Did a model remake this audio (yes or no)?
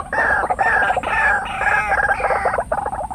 no